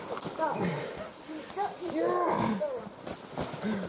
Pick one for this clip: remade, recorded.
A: recorded